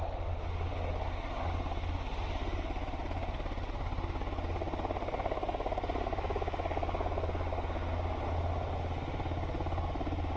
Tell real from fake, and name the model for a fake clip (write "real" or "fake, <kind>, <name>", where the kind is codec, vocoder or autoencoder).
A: real